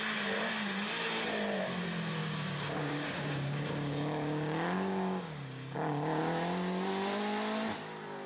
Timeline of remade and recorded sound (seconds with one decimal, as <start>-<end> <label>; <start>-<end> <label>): 0.0-2.2 recorded; 2.2-6.2 remade; 6.2-8.3 recorded